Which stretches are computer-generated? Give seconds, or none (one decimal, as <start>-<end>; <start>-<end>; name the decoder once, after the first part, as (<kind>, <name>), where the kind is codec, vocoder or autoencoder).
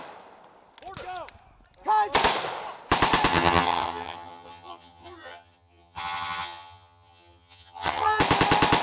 3.3-8.2 (vocoder, HiFi-GAN)